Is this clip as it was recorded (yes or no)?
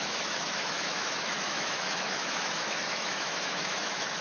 no